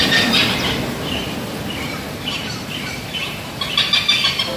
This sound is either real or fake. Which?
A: real